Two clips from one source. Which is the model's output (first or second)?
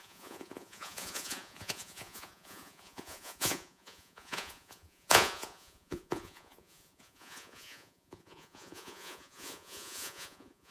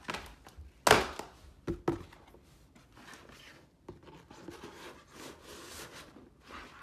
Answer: first